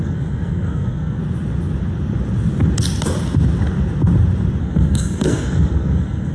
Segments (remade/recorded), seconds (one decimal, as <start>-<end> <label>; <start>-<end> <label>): 0.0-1.2 remade; 1.2-4.6 recorded; 4.6-6.3 remade